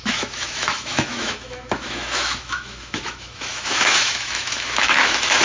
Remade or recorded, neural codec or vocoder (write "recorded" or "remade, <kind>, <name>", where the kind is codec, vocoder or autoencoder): remade, autoencoder, DAC-VAE